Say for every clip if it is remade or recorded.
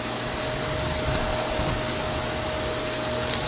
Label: recorded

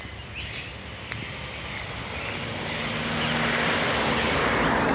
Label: recorded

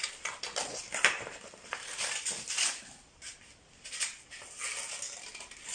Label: recorded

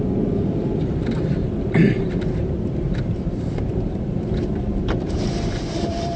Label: remade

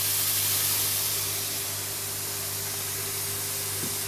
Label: recorded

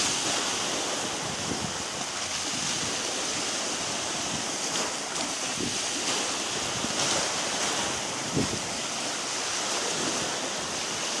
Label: recorded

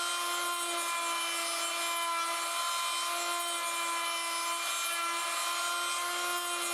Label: recorded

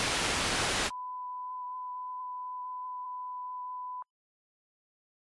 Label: remade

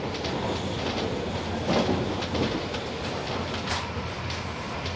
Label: recorded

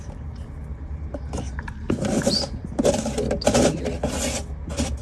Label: recorded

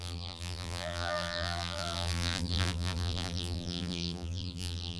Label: remade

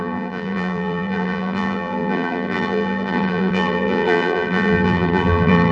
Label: remade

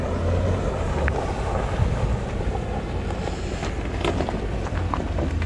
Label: recorded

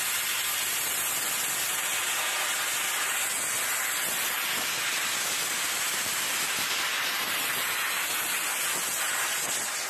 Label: recorded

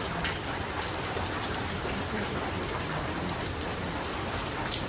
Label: remade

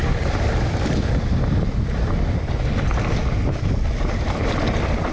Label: remade